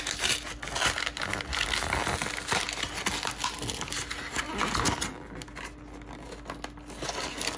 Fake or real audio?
real